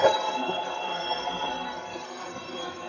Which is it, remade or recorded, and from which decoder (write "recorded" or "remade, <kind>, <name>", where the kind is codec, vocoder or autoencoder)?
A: remade, codec, SNAC